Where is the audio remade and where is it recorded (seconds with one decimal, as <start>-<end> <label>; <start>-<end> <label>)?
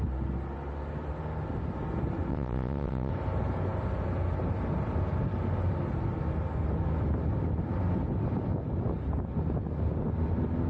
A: 0.0-2.3 recorded; 2.3-3.1 remade; 3.1-10.7 recorded